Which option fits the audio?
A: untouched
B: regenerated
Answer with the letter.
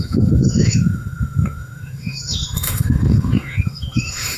B